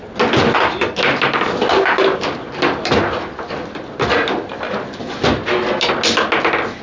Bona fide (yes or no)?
yes